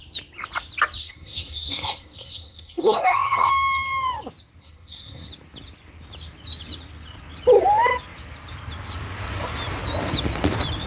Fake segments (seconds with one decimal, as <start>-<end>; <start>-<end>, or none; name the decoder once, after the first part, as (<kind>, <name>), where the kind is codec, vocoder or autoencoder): 1.0-3.5 (codec, SNAC); 4.6-5.3

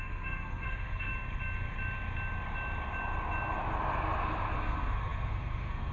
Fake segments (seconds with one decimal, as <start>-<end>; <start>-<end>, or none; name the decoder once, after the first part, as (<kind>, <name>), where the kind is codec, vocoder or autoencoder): 0.0-1.1 (codec, SNAC); 4.6-5.9

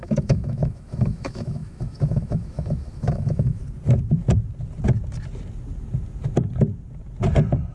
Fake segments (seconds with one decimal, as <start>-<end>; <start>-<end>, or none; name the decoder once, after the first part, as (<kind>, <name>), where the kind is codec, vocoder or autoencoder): 0.0-3.6 (autoencoder, DAC-VAE)

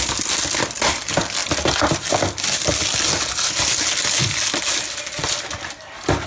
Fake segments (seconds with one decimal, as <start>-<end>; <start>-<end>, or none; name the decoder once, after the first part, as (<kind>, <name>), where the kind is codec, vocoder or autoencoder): none